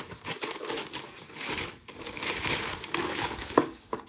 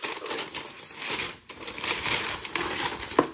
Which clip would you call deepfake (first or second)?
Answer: first